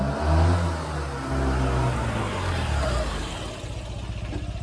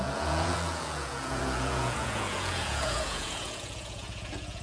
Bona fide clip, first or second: first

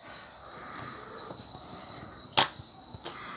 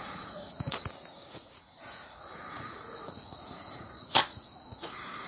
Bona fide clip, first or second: first